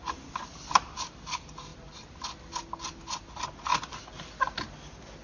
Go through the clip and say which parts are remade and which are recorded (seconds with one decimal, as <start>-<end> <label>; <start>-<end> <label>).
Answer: 0.0-5.2 recorded